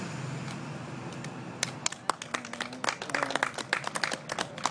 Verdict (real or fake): real